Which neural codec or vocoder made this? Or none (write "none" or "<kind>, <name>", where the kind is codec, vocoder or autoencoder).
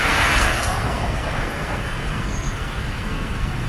codec, SNAC